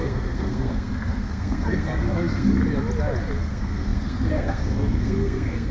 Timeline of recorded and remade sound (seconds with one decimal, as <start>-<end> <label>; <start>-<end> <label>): 0.0-2.6 remade; 2.6-3.4 recorded; 3.4-5.7 remade